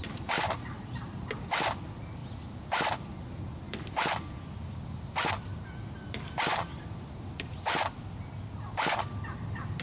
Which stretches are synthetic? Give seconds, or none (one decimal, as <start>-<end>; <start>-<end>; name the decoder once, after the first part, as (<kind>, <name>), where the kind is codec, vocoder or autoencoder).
none